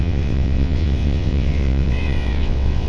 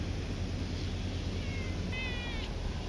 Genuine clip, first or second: second